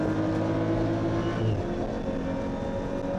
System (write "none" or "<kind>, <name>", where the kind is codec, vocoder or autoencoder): none